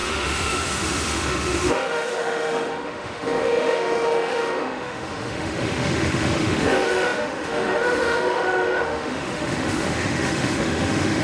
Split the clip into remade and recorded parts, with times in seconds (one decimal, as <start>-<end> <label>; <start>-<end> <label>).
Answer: 0.0-11.2 remade